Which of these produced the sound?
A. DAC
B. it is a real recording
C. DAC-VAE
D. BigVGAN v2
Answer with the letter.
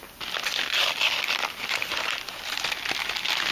B